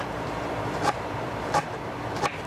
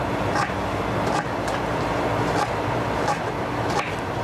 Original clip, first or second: second